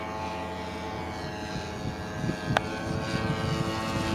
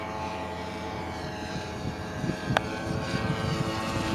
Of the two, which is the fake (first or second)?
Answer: second